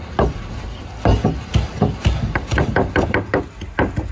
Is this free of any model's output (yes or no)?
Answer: yes